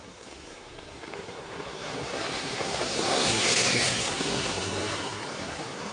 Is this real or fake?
fake